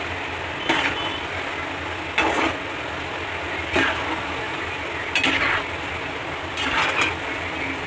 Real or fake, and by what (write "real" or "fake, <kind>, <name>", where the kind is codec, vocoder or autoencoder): real